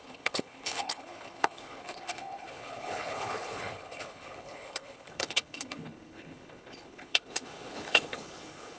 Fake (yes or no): yes